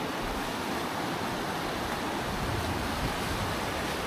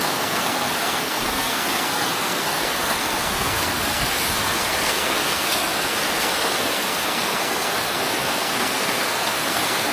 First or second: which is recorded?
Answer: first